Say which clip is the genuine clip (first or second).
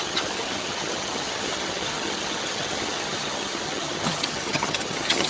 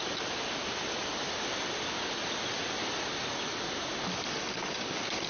second